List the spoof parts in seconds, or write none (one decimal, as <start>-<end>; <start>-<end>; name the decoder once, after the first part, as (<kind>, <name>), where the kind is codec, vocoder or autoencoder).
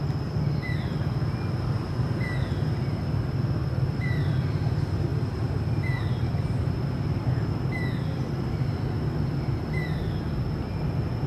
none